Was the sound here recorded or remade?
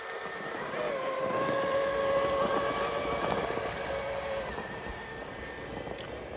recorded